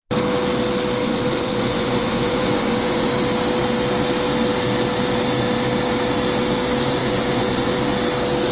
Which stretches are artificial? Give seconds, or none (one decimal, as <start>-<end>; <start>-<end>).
1.0-3.1; 7.0-7.7